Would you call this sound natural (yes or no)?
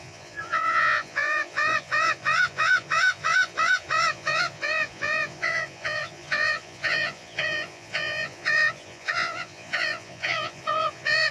no